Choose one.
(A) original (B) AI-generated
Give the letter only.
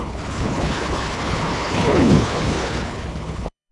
B